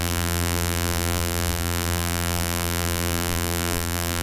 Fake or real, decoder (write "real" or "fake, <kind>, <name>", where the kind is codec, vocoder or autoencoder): fake, vocoder, BigVGAN v2